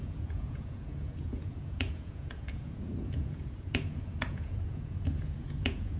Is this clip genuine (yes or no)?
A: no